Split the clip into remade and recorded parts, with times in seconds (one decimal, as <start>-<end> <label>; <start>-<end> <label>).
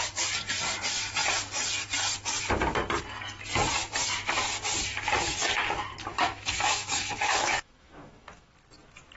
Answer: 0.0-6.1 recorded; 6.1-8.5 remade; 8.5-9.2 recorded